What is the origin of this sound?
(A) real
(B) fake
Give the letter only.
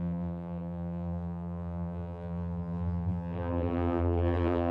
B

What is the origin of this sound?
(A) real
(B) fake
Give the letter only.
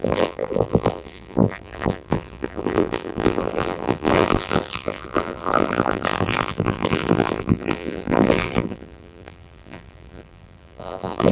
B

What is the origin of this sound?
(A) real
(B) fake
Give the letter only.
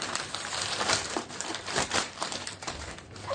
B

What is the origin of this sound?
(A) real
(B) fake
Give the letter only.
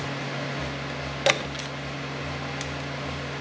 A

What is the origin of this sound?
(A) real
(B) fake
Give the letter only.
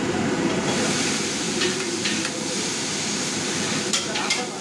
B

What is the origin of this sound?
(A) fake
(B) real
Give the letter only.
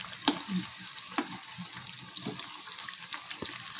A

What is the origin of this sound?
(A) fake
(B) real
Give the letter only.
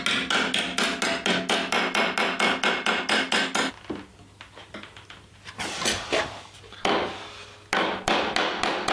B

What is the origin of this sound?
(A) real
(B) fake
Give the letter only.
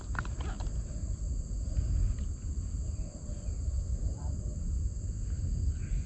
A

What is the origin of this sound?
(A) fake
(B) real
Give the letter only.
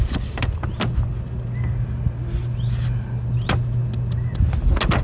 B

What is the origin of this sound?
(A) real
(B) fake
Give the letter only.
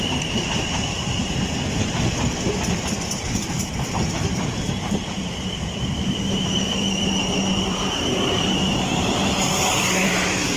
B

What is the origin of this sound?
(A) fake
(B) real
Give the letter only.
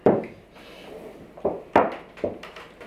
B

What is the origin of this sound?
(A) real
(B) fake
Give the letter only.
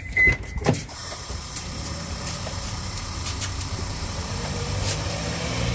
B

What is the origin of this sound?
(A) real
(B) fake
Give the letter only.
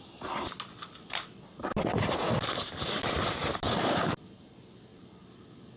A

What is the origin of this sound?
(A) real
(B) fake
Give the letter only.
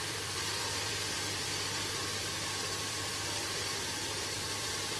B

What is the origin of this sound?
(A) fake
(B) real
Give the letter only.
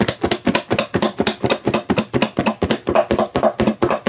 B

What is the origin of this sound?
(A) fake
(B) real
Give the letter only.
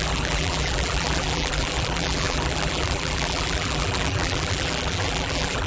A